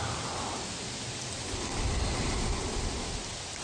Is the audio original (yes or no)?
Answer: yes